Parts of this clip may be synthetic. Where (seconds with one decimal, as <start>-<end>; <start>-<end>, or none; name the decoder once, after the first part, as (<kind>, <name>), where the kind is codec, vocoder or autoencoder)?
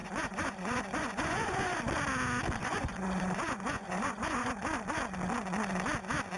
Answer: 0.0-1.8 (vocoder, Vocos); 2.6-4.5